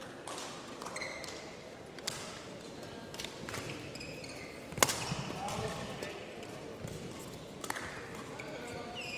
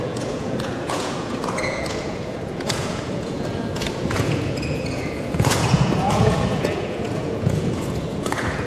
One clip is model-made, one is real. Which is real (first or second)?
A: first